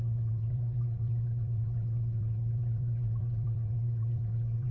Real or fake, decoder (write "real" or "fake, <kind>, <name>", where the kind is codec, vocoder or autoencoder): fake, vocoder, WaveNeXt